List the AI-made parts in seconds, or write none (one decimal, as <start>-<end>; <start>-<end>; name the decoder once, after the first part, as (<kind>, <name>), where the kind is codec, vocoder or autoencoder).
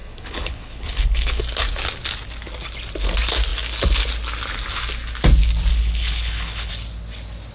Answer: 0.0-1.4 (codec, HILCodec); 5.7-6.7